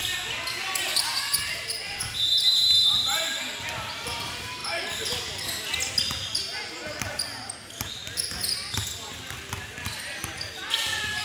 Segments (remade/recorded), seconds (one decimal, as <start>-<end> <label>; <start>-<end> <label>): 0.0-11.2 recorded